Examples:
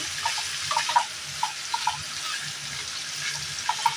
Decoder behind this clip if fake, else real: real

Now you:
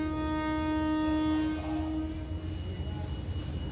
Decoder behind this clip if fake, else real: real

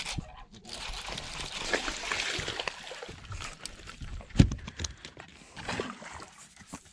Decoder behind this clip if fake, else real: real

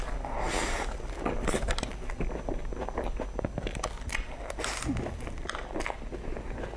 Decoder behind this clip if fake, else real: real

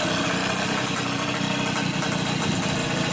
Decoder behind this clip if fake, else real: real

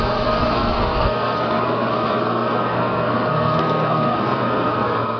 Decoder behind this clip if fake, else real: fake, codec, SNAC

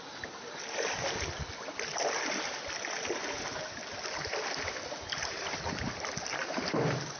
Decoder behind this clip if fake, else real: real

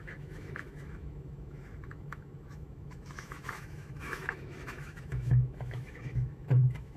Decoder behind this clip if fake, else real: fake, autoencoder, DAC-VAE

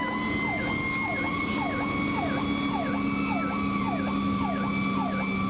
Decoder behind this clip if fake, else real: real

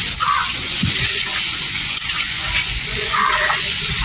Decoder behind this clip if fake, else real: fake, vocoder, Vocos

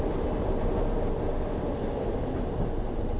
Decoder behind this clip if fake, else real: real